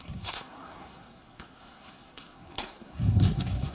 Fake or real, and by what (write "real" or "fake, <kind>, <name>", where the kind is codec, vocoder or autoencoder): fake, codec, SNAC